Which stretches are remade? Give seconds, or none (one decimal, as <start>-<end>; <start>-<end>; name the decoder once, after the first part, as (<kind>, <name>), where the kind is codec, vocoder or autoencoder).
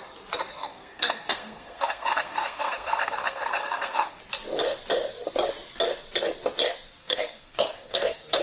0.6-4.2 (codec, SNAC); 7.0-8.4